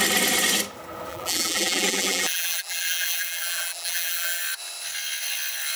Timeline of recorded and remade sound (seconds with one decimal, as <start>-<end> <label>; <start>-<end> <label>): 0.0-1.1 recorded; 1.1-4.4 remade; 4.4-5.8 recorded